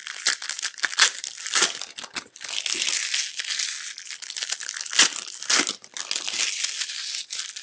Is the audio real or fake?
real